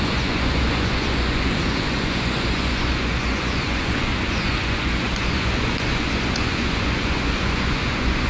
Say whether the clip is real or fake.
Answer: fake